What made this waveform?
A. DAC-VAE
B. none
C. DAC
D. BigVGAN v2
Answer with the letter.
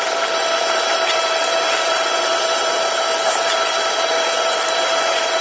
D